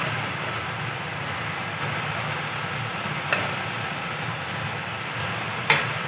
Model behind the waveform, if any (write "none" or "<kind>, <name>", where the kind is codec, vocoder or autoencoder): none